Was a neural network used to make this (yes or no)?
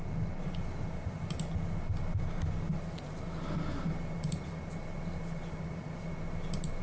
no